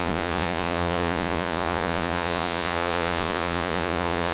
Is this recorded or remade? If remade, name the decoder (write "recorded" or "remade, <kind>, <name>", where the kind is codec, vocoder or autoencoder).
remade, vocoder, Vocos